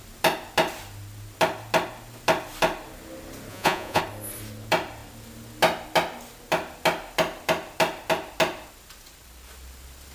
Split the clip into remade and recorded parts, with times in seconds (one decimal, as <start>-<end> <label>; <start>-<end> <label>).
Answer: 0.0-3.5 recorded; 3.5-4.0 remade; 4.0-10.1 recorded